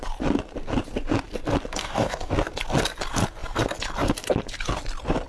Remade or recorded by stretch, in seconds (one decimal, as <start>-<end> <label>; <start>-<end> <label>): 0.0-1.8 recorded; 1.8-2.3 remade; 2.3-5.3 recorded